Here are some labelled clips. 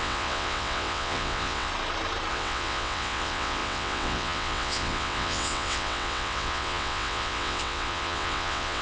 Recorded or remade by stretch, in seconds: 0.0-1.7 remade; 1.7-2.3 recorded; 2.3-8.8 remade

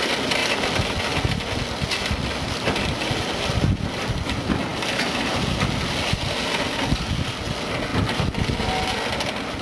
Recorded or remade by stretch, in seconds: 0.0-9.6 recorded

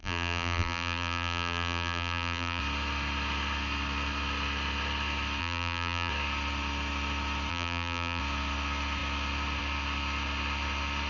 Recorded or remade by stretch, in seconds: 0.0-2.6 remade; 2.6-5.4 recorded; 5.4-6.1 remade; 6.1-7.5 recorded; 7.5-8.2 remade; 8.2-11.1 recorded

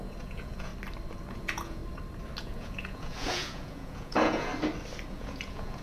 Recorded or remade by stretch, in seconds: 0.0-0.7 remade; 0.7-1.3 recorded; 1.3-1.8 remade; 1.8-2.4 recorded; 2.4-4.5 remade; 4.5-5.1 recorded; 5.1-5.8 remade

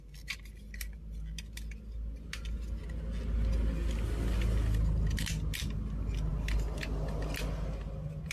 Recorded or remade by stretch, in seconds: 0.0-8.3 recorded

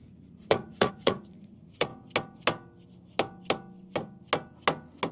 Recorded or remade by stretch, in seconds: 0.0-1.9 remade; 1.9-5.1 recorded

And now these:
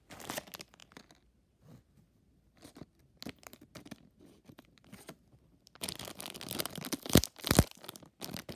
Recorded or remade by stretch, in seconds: 0.0-8.6 recorded

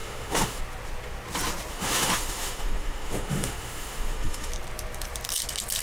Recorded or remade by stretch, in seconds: 0.0-0.6 remade; 0.6-1.7 recorded; 1.7-4.5 remade; 4.5-5.8 recorded